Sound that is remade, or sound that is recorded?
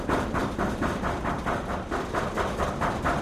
recorded